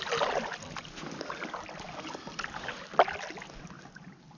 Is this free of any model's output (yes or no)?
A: yes